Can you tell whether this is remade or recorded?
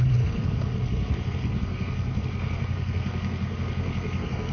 remade